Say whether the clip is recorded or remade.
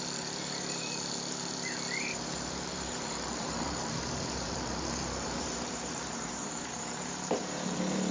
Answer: remade